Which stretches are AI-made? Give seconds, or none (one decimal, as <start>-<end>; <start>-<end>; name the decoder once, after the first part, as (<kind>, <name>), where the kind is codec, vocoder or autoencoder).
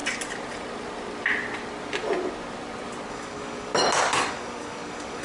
3.1-3.7 (codec, DAC); 4.3-5.2